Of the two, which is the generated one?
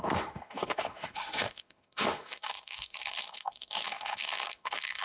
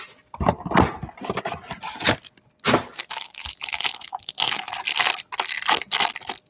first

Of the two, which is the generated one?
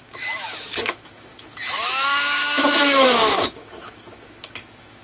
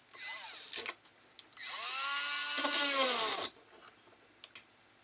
first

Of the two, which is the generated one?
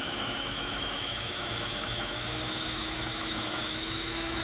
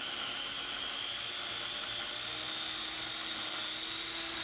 first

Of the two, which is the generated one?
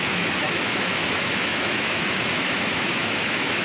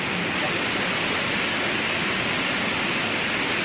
first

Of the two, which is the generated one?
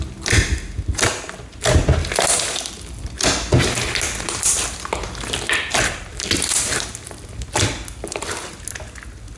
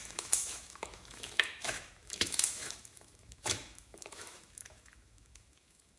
second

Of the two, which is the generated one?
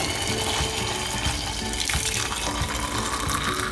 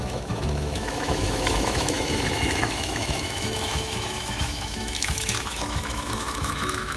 second